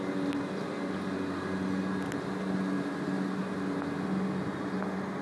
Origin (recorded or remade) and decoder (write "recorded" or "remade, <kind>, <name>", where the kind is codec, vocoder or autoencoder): recorded